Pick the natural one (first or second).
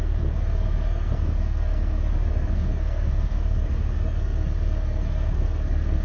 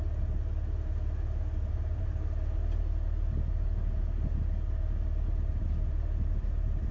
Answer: second